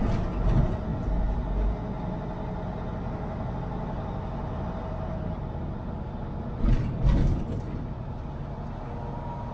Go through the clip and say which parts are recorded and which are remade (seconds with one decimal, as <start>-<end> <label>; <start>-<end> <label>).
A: 0.0-9.5 recorded

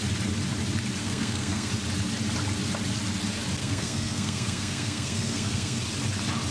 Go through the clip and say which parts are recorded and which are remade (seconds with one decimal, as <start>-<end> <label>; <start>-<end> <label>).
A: 0.0-1.0 recorded; 1.0-1.7 remade; 1.7-3.6 recorded; 3.6-5.8 remade; 5.8-6.5 recorded

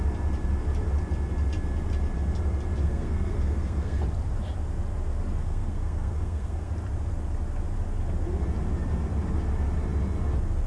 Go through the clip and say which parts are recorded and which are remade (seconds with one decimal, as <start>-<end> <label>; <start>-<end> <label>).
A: 0.0-2.8 recorded; 2.8-4.0 remade; 4.0-5.4 recorded; 5.4-6.7 remade; 6.7-10.7 recorded

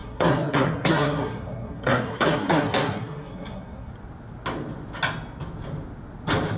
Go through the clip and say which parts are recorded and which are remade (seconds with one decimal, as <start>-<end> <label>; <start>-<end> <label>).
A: 0.0-3.9 remade; 3.9-6.6 recorded